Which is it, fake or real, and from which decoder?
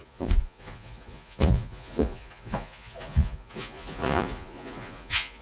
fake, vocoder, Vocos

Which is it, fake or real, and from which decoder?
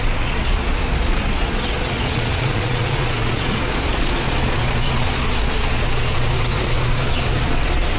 fake, vocoder, Vocos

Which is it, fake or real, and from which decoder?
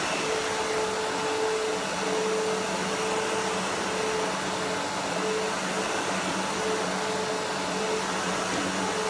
real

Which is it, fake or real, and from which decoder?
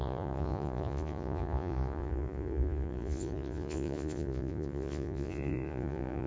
fake, vocoder, Vocos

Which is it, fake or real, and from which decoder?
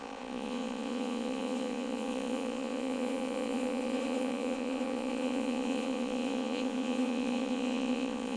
fake, vocoder, Vocos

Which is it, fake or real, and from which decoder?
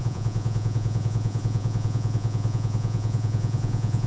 fake, vocoder, Vocos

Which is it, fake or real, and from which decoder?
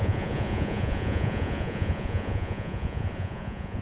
fake, vocoder, Vocos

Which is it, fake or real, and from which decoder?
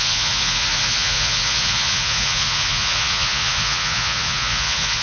fake, vocoder, Vocos